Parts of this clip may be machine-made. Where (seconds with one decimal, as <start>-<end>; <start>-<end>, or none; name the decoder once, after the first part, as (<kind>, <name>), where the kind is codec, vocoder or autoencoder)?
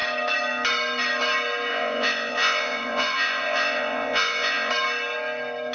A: 1.7-4.7 (vocoder, Vocos)